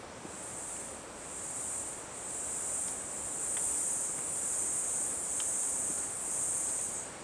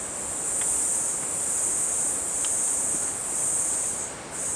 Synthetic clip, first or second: first